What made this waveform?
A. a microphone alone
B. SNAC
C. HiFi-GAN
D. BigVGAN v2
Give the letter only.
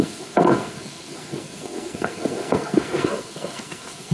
B